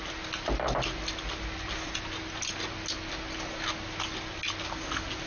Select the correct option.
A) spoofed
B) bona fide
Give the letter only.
B